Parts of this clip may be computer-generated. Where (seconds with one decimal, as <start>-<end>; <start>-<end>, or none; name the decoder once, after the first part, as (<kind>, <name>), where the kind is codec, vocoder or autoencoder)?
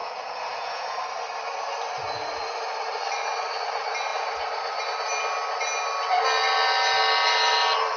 0.0-1.0 (vocoder, Vocos)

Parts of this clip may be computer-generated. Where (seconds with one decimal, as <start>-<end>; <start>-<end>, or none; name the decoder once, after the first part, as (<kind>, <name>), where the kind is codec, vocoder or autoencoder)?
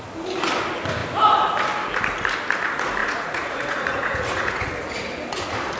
3.0-4.7 (vocoder, Vocos)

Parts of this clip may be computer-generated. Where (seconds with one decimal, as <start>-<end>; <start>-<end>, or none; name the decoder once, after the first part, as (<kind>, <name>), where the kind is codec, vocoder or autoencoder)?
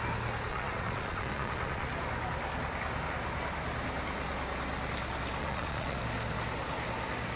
0.5-1.9 (vocoder, Vocos); 5.4-6.0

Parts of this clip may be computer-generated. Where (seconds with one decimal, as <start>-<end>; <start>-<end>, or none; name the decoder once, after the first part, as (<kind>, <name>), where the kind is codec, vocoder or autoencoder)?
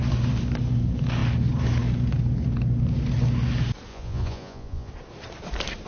3.9-4.9 (vocoder, Vocos)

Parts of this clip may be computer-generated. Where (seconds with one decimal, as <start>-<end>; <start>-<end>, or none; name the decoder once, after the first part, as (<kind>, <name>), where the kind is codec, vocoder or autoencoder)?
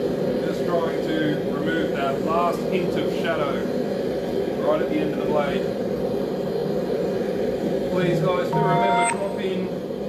none